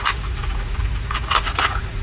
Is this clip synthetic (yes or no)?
yes